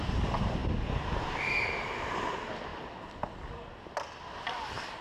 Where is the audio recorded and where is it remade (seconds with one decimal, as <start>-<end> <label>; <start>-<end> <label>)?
0.0-5.0 recorded